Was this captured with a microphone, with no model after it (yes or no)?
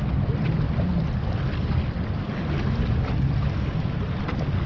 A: yes